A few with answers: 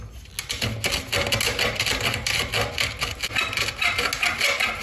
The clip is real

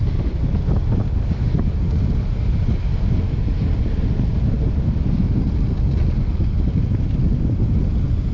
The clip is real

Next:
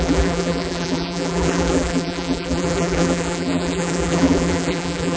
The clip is fake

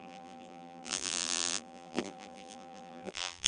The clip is fake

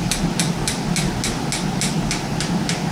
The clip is real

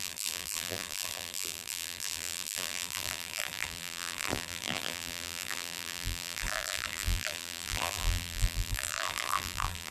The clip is fake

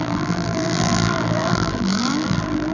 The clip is fake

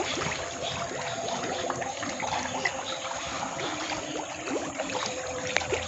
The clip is real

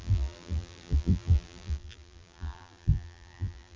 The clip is fake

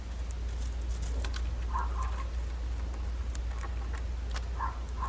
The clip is real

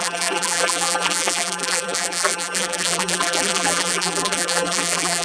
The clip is fake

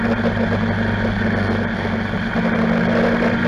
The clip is real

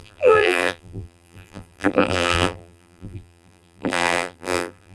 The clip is fake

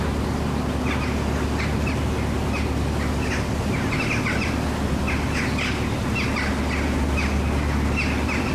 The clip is real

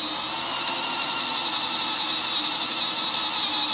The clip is real